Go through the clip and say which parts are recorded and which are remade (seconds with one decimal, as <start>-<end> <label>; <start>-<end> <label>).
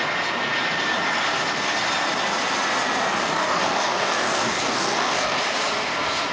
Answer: 0.0-3.1 recorded; 3.1-5.4 remade; 5.4-6.3 recorded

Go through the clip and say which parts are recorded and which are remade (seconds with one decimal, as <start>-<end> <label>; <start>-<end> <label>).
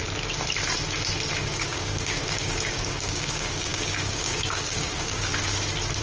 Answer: 0.0-1.4 recorded; 1.4-5.3 remade; 5.3-6.0 recorded